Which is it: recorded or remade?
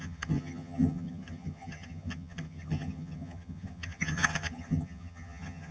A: remade